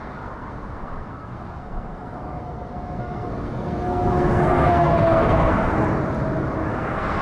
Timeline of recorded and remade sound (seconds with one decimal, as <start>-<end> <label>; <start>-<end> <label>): 0.0-5.8 remade; 5.8-6.7 recorded; 6.7-7.2 remade